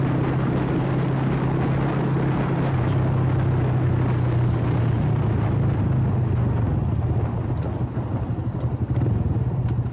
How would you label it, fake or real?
real